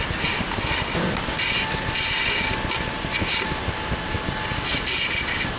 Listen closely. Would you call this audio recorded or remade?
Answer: recorded